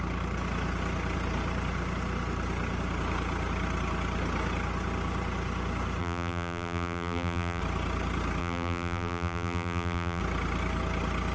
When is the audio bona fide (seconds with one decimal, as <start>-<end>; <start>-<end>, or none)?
0.0-6.0; 7.6-8.4; 10.2-11.3